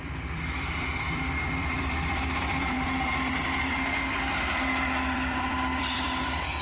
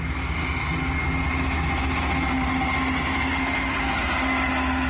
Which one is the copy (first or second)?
first